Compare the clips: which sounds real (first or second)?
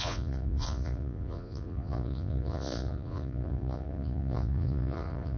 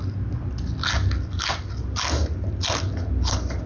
second